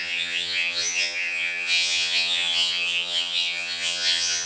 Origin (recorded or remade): remade